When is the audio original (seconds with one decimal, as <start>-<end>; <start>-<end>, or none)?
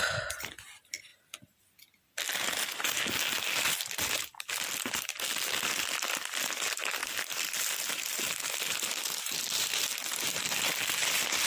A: 0.0-11.5